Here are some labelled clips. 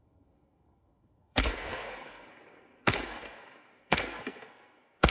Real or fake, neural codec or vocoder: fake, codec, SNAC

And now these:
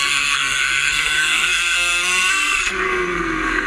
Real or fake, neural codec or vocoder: fake, codec, SNAC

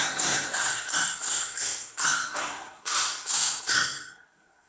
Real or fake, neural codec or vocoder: fake, codec, SNAC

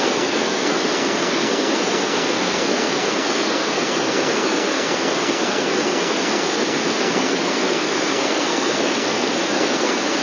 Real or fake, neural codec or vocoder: fake, codec, SNAC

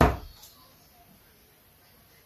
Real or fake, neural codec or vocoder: real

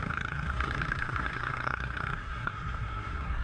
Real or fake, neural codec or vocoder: fake, codec, SNAC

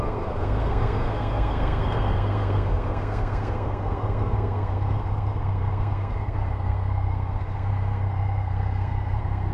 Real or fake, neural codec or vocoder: fake, codec, SNAC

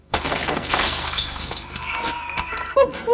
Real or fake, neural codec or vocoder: fake, codec, SNAC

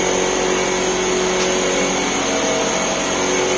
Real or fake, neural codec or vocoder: real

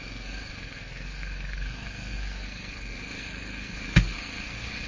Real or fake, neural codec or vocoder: fake, codec, SNAC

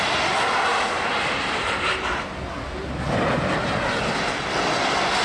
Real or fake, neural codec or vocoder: real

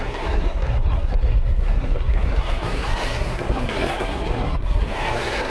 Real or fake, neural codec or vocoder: fake, codec, SNAC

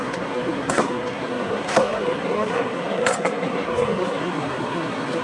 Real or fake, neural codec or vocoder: fake, codec, SNAC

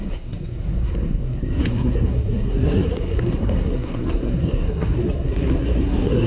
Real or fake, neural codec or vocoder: fake, codec, SNAC